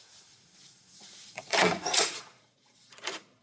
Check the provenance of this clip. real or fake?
fake